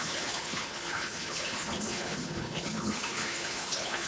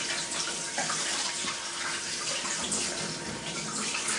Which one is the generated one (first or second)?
first